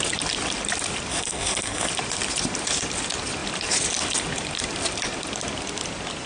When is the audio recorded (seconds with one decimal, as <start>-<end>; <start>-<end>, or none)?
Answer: 0.0-1.1; 1.9-6.3